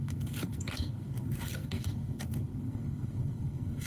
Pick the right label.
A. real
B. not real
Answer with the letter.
B